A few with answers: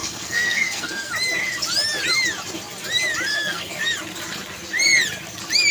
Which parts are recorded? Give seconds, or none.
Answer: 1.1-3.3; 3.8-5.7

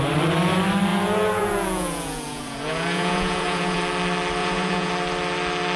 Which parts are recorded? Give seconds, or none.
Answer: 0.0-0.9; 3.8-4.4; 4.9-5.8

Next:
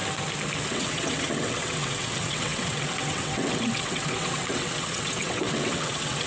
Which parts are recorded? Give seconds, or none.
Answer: 0.0-0.7